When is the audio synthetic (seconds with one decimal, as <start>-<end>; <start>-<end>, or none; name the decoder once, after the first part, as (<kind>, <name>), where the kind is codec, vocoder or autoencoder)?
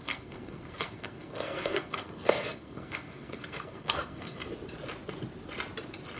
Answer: 0.0-4.4 (codec, SNAC)